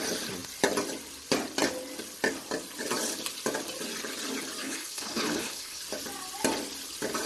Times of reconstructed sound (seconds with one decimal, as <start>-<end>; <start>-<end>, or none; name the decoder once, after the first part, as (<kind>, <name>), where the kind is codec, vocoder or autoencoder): 4.6-5.8 (codec, HILCodec)